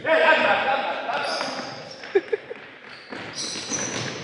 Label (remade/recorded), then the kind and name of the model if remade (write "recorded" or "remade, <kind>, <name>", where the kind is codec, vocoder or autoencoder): recorded